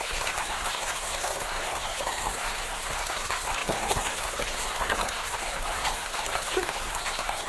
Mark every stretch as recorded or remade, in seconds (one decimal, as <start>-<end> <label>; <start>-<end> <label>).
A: 0.0-7.5 remade